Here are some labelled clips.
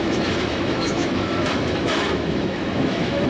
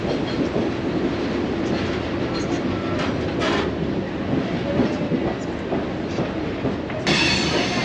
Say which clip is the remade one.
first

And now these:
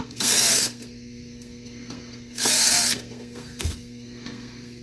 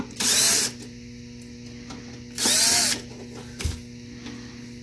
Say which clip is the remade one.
first